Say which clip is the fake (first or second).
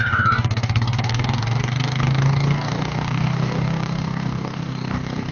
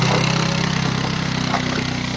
first